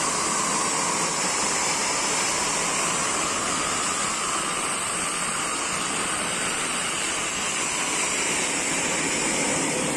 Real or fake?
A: real